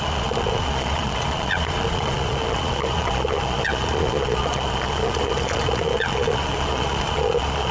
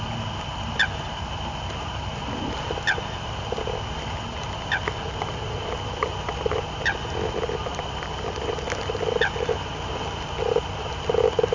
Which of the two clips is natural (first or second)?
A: second